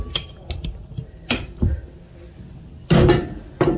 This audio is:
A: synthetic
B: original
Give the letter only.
B